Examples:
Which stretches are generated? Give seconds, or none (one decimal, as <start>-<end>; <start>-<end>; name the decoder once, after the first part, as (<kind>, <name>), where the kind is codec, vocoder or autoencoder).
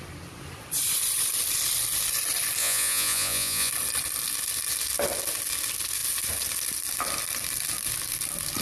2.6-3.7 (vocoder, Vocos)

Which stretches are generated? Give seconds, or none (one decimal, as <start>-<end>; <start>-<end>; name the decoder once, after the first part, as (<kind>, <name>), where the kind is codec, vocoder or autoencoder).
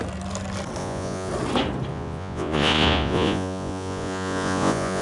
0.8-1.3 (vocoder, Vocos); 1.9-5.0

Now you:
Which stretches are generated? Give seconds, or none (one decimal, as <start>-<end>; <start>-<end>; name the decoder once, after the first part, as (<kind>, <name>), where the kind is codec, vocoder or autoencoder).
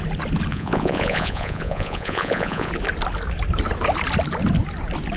0.5-2.7 (vocoder, Vocos)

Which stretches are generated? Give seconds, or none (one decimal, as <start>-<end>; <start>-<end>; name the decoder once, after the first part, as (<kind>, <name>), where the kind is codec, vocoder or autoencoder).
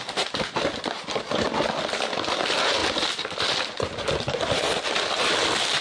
none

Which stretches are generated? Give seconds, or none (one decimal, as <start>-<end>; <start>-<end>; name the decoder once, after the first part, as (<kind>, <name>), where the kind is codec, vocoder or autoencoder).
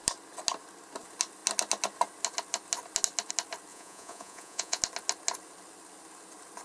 3.7-4.8 (vocoder, Vocos)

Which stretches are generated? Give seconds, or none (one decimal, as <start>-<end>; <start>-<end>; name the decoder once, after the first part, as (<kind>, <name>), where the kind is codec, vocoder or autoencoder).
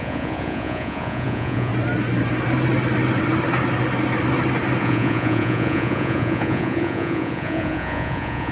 0.0-1.7 (vocoder, Vocos); 4.8-8.5